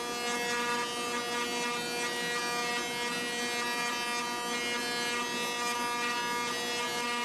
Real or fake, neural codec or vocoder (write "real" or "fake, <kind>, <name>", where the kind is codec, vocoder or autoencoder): real